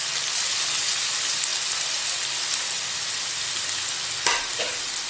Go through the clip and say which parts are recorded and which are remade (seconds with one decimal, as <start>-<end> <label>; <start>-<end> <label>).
0.0-5.1 recorded